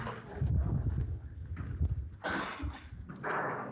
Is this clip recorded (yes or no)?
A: yes